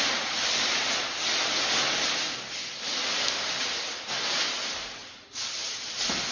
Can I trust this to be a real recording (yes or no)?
yes